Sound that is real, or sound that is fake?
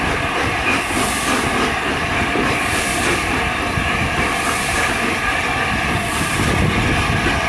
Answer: real